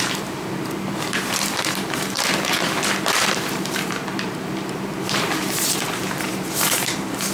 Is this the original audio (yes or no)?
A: no